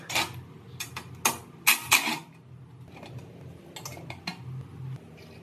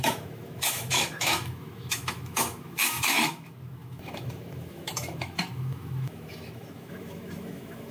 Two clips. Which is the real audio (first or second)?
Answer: first